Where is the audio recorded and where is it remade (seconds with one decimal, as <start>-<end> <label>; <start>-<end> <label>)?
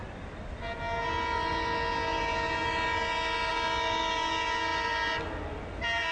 0.0-6.1 recorded